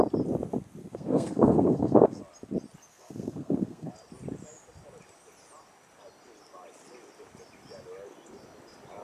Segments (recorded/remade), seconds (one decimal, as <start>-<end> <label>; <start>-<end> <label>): 0.0-0.8 recorded; 0.8-2.2 remade; 2.2-2.9 recorded; 2.9-3.9 remade; 3.9-9.0 recorded